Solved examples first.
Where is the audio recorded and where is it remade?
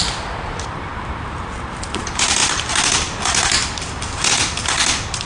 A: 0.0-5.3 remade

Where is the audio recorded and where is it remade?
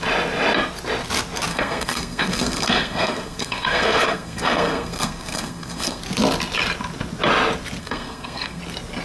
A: 0.0-1.5 recorded; 1.5-6.0 remade; 6.0-7.8 recorded; 7.8-8.6 remade; 8.6-9.0 recorded